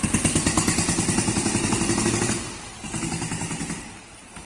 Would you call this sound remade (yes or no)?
no